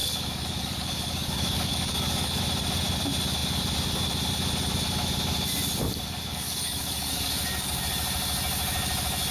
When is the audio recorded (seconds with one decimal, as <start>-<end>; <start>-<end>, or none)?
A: 2.4-6.3; 7.8-9.3